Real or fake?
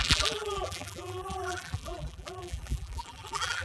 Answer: fake